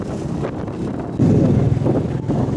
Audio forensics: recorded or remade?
recorded